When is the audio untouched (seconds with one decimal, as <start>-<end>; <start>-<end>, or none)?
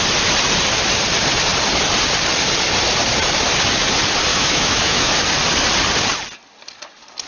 0.0-4.3; 5.1-7.3